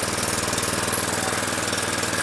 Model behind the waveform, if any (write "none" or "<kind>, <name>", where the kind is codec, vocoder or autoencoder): none